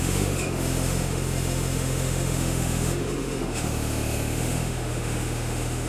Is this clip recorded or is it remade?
remade